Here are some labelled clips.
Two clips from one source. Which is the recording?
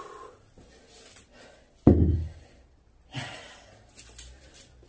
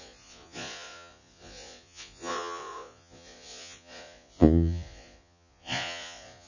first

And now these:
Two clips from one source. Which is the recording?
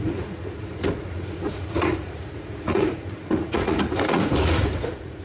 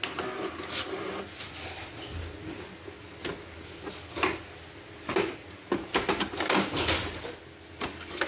second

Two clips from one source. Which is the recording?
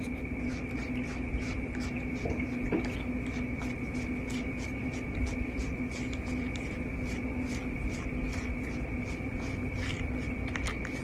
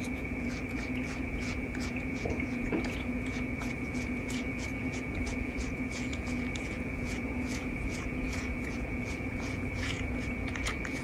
first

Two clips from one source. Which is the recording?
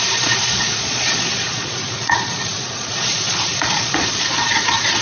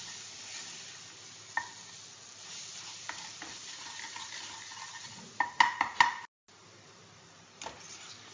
second